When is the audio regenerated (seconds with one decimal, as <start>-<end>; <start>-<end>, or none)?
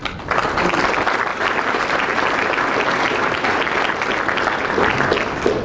0.4-0.9; 1.3-3.7